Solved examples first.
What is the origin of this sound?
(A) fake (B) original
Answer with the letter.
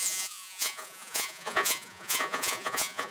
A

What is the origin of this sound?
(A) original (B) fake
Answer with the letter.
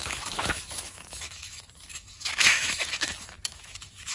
B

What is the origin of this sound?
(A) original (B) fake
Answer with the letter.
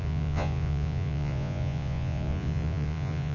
B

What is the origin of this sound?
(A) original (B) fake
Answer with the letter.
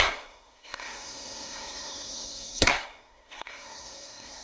B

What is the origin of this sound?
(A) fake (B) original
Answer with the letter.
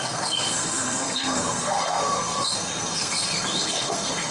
A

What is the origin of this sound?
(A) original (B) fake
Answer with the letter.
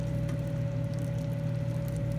A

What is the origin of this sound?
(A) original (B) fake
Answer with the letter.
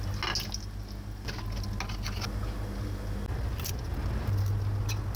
A